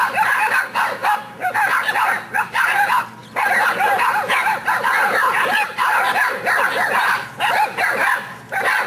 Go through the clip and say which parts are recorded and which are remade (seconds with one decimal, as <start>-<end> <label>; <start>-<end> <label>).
0.0-8.9 recorded